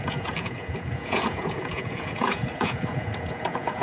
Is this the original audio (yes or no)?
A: no